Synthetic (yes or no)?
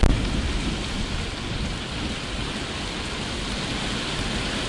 no